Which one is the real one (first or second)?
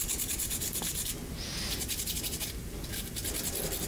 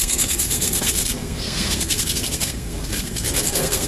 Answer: first